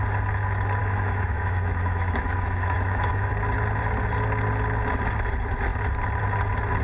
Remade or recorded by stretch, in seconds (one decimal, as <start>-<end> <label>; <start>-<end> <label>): 0.0-0.8 recorded; 0.8-3.3 remade; 3.3-6.8 recorded